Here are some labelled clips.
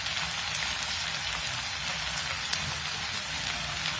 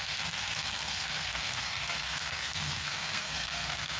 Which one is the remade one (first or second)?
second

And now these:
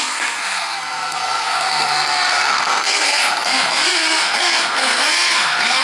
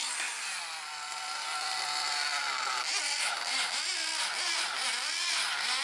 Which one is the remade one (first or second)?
first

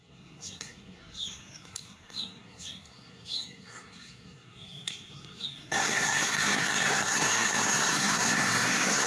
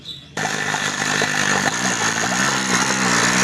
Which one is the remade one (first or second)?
first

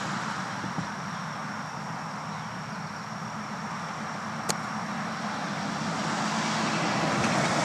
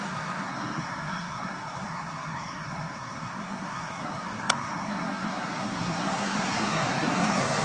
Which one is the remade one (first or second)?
second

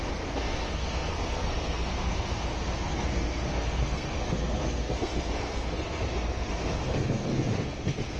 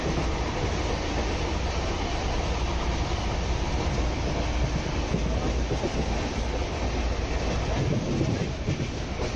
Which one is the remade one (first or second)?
first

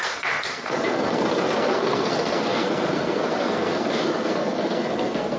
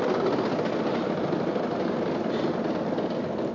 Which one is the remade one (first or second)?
first